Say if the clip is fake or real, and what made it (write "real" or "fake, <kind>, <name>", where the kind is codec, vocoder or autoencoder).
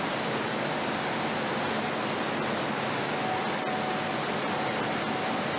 real